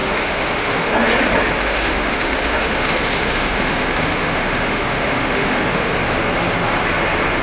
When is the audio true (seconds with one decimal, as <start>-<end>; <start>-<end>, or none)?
0.9-1.6; 5.9-7.4